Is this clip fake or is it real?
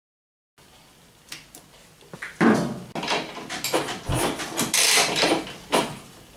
real